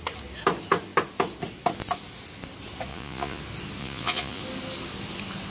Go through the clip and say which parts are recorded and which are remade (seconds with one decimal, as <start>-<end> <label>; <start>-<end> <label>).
0.0-2.9 recorded; 2.9-3.4 remade; 3.4-3.8 recorded; 3.8-4.4 remade; 4.4-5.5 recorded